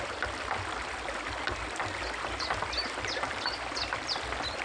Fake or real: real